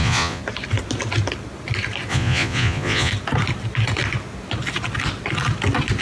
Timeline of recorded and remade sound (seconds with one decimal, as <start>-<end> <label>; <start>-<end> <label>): 0.0-0.4 remade; 0.4-2.1 recorded; 2.1-3.1 remade; 3.1-6.0 recorded